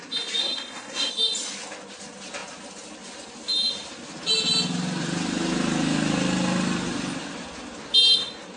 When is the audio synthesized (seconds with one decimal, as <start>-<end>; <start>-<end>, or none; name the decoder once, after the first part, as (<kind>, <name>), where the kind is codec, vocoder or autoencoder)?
0.4-1.1 (codec, SNAC)